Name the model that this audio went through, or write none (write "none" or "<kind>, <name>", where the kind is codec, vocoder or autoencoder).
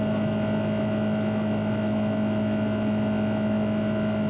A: none